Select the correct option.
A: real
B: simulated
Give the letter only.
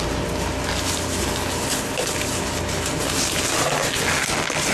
A